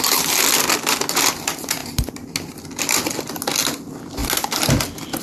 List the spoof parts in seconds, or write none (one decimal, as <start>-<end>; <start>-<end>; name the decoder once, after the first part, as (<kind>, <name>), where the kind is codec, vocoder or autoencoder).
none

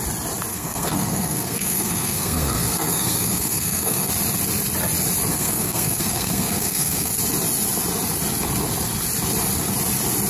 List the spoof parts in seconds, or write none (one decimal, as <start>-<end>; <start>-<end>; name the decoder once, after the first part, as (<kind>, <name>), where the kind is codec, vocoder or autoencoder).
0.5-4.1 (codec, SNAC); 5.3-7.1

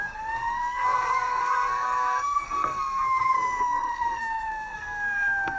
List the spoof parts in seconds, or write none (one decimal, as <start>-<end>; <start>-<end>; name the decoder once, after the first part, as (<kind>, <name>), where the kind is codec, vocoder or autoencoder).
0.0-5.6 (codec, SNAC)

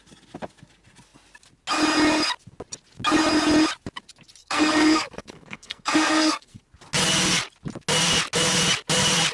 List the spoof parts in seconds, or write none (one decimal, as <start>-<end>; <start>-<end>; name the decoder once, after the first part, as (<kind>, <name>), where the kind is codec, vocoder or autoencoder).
4.4-6.6 (codec, SNAC)

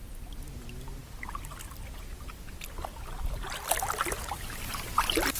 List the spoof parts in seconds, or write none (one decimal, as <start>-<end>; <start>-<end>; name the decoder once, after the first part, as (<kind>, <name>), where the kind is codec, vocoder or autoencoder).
none

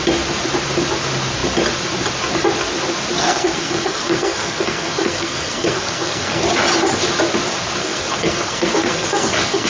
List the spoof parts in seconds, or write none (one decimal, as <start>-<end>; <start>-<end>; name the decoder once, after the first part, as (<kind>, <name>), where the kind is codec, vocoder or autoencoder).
3.2-6.4 (codec, SNAC); 7.8-9.7

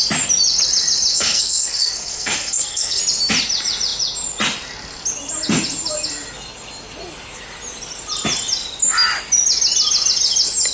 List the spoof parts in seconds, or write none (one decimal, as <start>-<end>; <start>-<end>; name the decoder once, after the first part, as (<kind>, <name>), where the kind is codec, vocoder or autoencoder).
1.1-3.0 (codec, SNAC)